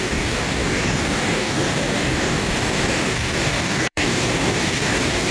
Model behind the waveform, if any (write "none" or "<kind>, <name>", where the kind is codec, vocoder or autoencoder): codec, DAC